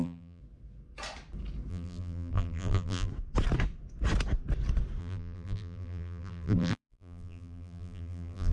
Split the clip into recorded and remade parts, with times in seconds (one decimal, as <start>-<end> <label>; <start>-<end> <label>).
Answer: 0.0-0.4 remade; 0.4-1.7 recorded; 1.7-3.1 remade; 3.1-5.0 recorded; 5.0-8.5 remade